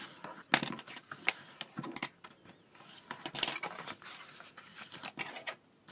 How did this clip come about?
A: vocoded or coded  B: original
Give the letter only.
B